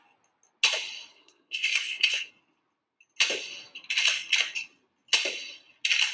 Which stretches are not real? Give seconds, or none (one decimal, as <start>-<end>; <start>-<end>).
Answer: 1.1-2.3